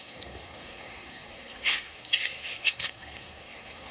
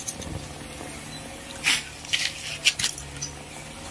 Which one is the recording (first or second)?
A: second